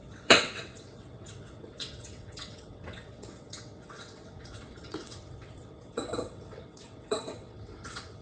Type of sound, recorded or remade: remade